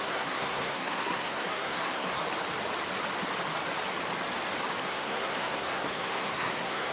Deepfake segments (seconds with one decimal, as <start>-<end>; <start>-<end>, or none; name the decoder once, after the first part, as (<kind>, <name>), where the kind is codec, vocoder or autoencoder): 0.0-2.2 (codec, SNAC); 4.8-6.9